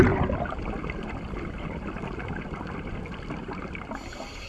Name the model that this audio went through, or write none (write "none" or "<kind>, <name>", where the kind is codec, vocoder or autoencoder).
none